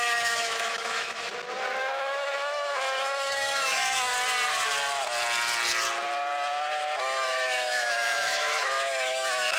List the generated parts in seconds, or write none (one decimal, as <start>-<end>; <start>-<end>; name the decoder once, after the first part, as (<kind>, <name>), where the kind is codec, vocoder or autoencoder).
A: 0.0-1.3 (autoencoder, DAC-VAE); 1.8-4.1; 7.0-9.6